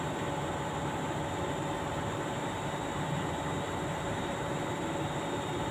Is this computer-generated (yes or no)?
no